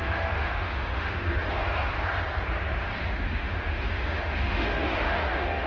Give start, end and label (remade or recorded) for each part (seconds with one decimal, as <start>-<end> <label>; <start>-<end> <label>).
0.0-1.6 remade; 1.6-3.0 recorded; 3.0-5.7 remade